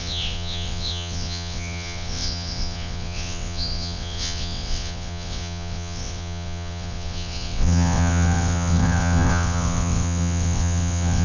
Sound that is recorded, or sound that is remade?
remade